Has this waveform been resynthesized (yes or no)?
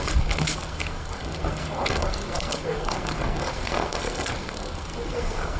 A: yes